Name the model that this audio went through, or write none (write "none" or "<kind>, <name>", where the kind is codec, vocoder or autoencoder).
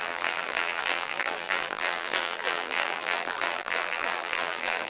vocoder, BigVGAN v2